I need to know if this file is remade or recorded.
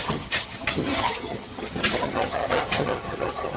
remade